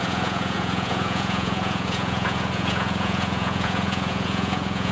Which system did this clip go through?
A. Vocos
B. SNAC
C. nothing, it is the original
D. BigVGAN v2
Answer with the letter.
A